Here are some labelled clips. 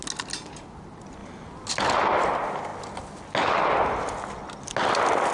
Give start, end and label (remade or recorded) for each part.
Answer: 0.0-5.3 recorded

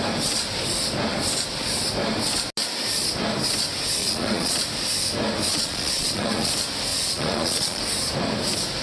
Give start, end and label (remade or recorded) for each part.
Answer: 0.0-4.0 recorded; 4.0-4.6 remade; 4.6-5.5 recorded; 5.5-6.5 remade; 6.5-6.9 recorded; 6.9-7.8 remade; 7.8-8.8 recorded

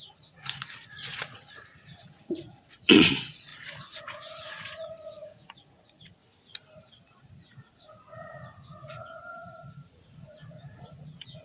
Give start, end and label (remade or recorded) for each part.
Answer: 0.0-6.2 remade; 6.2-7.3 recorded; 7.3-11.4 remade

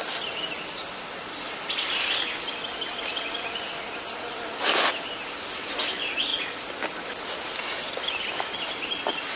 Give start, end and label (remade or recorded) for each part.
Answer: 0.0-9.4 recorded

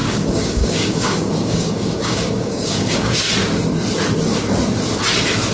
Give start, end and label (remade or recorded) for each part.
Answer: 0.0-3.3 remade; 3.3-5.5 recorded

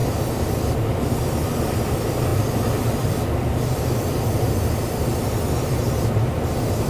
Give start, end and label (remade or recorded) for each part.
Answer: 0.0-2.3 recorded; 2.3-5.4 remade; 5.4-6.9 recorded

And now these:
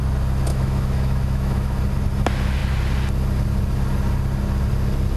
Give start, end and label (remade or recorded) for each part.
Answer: 0.0-0.5 recorded; 0.5-1.8 remade; 1.8-5.2 recorded